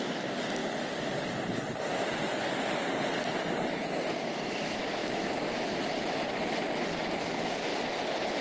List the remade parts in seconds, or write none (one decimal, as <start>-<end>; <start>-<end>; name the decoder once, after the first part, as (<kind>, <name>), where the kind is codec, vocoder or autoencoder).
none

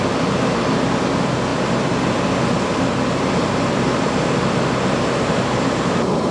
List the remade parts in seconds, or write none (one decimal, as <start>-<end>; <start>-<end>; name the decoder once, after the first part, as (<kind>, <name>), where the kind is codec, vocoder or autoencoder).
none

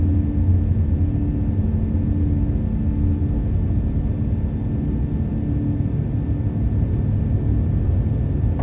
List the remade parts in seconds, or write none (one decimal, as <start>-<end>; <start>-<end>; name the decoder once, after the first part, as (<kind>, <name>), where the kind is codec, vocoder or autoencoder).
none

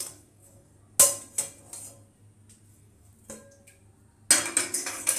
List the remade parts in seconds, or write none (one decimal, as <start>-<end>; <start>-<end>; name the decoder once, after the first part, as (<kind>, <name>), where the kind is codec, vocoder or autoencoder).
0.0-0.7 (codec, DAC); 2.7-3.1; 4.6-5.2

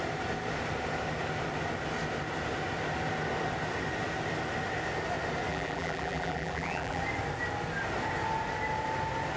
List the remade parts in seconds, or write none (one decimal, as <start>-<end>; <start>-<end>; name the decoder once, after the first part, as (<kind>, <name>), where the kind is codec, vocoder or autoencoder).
5.5-7.0 (vocoder, BigVGAN v2)